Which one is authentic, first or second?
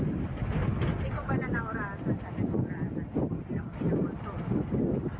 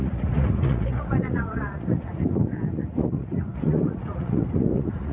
first